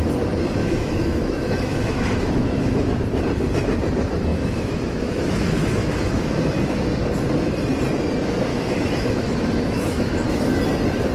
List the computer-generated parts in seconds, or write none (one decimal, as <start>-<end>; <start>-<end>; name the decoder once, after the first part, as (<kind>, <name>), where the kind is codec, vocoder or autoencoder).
0.6-3.0 (autoencoder, DAC-VAE); 4.3-6.4; 8.5-10.4